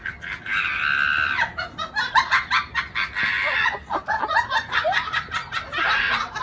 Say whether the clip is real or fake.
real